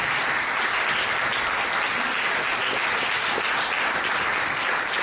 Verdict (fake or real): real